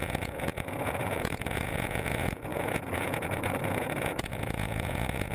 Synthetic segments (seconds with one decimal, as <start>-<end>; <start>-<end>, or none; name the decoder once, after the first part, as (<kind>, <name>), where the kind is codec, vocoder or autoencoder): 0.0-5.3 (vocoder, Vocos)